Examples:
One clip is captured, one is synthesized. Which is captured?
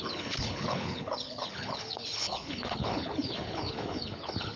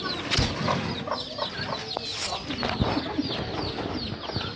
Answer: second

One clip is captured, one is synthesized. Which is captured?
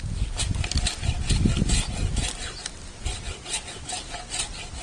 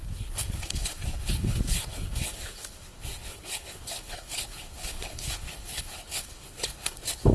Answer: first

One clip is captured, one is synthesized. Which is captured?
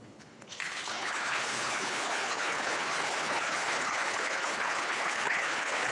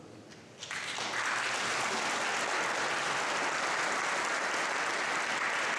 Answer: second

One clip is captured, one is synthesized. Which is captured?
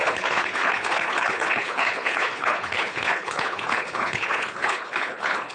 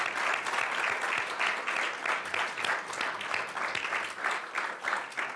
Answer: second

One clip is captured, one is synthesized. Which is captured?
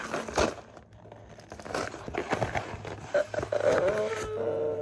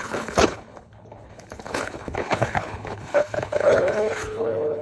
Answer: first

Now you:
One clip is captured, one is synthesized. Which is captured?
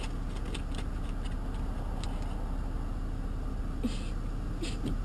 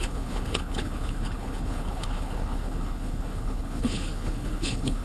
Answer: first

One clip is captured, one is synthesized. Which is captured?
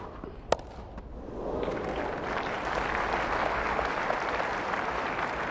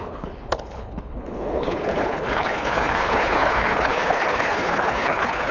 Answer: first